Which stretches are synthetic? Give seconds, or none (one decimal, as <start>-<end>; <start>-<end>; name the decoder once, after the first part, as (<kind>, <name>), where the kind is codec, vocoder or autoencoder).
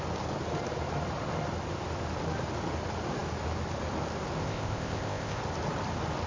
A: 4.4-5.4 (codec, ZipCodec)